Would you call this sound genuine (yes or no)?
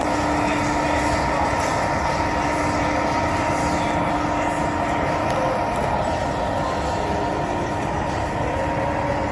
yes